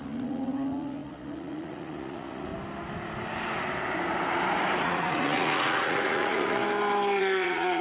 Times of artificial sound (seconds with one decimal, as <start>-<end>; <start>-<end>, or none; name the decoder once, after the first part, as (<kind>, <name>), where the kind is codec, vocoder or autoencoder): 0.0-2.5 (vocoder, Vocos); 4.8-6.6; 7.2-7.8

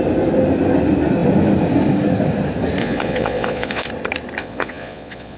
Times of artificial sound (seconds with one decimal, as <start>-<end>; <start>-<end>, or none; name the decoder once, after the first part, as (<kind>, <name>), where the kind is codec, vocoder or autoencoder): 2.8-3.9 (vocoder, Vocos); 4.4-5.4

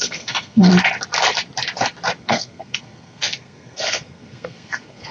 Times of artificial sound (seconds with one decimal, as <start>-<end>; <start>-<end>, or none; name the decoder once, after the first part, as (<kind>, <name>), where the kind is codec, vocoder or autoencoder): 0.0-0.7 (codec, SNAC); 2.2-5.1

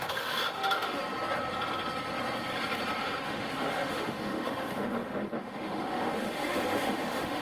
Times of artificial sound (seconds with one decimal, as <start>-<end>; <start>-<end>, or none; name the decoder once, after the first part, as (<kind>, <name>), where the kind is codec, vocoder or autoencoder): 0.0-1.0 (autoencoder, DAC-VAE); 3.0-7.4

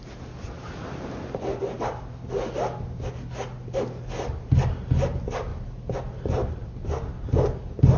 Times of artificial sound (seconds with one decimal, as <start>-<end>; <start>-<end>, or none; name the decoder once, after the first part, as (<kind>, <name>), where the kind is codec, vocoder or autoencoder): none

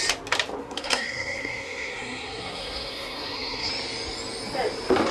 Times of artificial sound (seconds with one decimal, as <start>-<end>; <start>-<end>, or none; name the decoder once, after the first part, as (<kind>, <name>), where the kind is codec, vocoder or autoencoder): 0.6-3.7 (codec, SNAC)

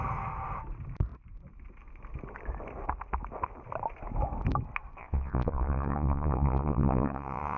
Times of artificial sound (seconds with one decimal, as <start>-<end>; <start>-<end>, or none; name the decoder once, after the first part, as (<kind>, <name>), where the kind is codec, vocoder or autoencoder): 5.0-7.6 (vocoder, Vocos)